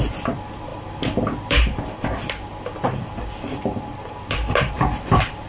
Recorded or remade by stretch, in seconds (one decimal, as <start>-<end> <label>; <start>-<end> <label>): 0.0-5.5 remade